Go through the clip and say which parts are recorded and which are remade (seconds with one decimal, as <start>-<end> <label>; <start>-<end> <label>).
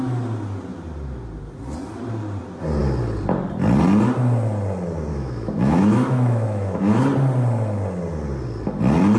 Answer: 0.0-5.1 recorded; 5.1-7.0 remade; 7.0-9.2 recorded